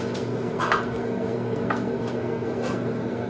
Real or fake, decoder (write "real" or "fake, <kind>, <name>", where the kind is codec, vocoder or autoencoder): fake, codec, SNAC